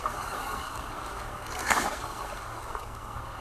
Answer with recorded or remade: remade